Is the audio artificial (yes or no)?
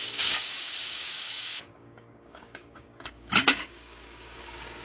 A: yes